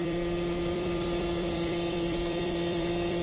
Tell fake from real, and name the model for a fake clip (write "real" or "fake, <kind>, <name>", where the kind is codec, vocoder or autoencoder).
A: fake, vocoder, BigVGAN v2